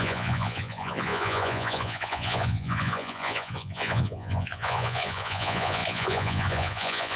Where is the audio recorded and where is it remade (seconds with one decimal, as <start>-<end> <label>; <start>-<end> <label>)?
0.0-7.2 remade